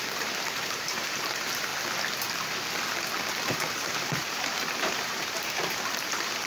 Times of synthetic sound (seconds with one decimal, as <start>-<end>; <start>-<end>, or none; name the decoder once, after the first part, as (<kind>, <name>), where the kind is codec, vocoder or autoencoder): 0.0-1.7 (vocoder, BigVGAN v2); 3.5-6.5